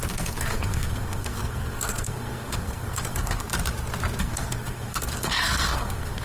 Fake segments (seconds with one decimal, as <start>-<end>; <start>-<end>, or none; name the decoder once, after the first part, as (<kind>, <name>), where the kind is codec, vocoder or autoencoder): 0.0-3.5 (codec, SNAC); 4.2-6.2

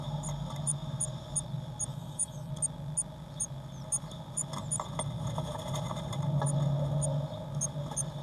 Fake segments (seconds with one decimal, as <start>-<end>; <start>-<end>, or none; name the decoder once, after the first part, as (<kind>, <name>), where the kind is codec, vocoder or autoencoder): 1.9-2.5 (autoencoder, DAC-VAE)

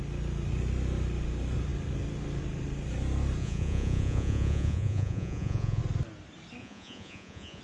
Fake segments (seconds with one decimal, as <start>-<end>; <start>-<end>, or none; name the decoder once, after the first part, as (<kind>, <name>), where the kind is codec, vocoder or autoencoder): 3.4-5.8 (vocoder, Vocos); 6.6-7.6